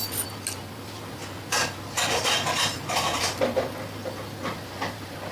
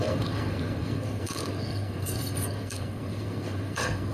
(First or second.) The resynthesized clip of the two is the second